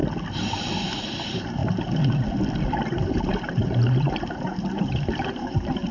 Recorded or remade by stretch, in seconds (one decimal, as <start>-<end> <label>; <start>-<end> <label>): 0.0-0.9 recorded; 0.9-1.6 remade; 1.6-2.9 recorded; 2.9-5.9 remade